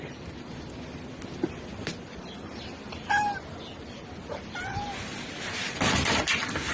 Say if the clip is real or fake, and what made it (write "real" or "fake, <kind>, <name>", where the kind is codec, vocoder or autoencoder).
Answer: real